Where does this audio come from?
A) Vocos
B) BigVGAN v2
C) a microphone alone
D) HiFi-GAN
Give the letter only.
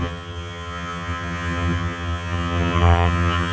D